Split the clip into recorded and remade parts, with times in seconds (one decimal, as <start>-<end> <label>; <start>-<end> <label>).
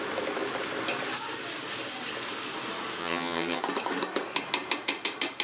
0.0-3.0 recorded; 3.0-3.6 remade; 3.6-5.4 recorded